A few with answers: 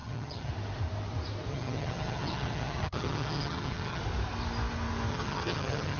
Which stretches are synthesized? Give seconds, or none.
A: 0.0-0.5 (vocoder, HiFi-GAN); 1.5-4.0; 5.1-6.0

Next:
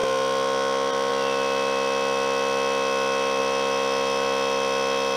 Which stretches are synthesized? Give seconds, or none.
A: none